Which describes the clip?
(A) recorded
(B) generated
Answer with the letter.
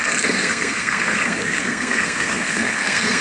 B